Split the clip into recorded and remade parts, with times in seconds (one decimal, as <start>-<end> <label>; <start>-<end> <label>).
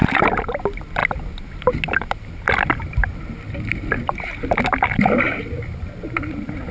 0.0-6.7 recorded